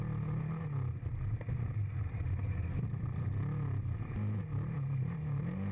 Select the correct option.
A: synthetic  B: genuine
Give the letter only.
B